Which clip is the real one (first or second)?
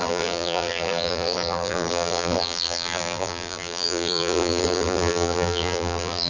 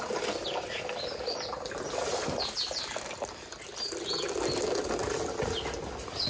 second